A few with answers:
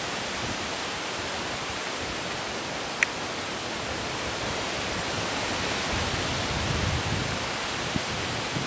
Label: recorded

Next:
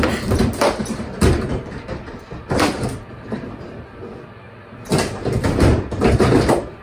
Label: remade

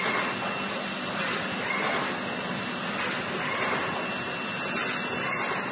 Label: recorded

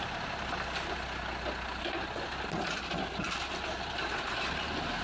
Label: recorded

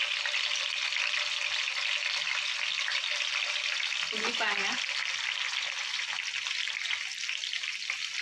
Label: recorded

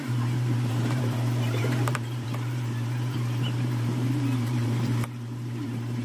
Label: remade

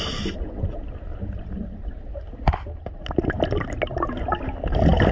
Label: recorded